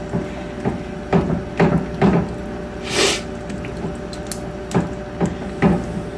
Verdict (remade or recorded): recorded